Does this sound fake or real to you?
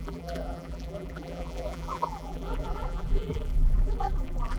fake